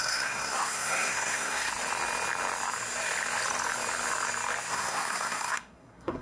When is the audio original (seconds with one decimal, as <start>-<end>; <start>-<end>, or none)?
1.7-4.7